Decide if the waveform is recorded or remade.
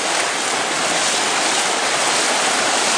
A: recorded